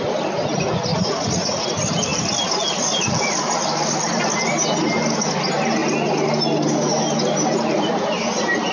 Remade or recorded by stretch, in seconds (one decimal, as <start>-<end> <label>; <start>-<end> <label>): 0.0-0.9 recorded; 0.9-1.7 remade; 1.7-8.7 recorded